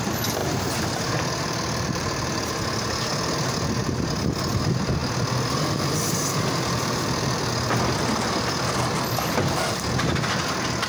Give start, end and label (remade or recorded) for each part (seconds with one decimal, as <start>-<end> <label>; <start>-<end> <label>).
0.0-0.4 recorded; 0.4-2.5 remade; 2.5-5.0 recorded; 5.0-7.5 remade; 7.5-10.9 recorded